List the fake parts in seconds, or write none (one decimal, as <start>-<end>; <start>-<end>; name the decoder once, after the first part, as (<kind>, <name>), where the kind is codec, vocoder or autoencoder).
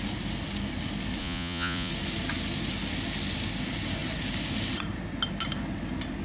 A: 1.2-1.9 (vocoder, Vocos)